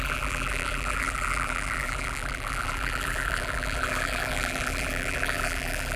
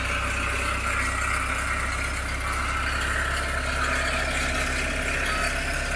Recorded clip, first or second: second